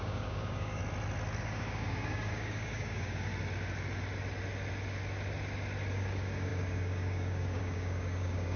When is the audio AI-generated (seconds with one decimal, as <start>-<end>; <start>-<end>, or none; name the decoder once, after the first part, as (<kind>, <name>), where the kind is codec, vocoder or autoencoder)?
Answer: 0.0-0.8 (codec, DAC); 1.4-3.3; 5.9-8.6